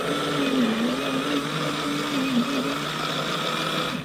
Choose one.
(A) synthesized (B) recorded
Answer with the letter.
B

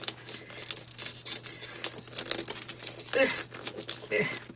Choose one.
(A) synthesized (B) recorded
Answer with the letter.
B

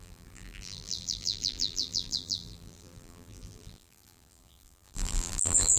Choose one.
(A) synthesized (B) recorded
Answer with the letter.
A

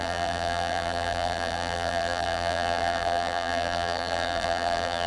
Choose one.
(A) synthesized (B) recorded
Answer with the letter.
A